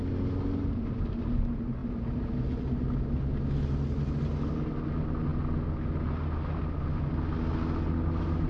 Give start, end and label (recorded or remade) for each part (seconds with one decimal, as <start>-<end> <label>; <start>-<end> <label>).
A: 0.0-8.5 recorded